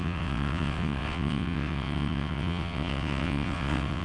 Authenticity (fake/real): fake